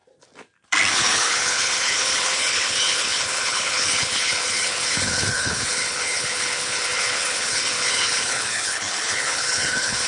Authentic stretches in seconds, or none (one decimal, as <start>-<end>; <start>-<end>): 0.0-0.9